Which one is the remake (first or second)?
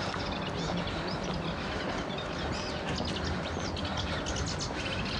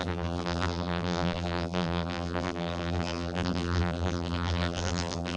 second